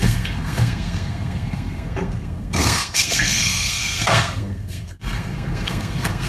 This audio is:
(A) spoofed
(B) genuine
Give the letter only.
A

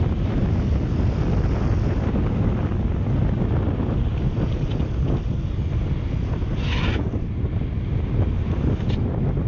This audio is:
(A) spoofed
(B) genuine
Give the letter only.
B